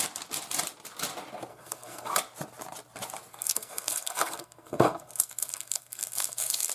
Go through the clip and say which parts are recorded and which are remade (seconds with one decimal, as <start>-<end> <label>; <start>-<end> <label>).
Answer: 0.0-1.5 recorded; 1.5-2.1 remade; 2.1-3.3 recorded; 3.3-6.7 remade

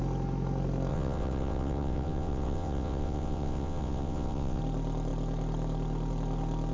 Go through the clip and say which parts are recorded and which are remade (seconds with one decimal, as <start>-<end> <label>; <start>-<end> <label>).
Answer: 0.0-0.9 recorded; 0.9-4.6 remade; 4.6-6.7 recorded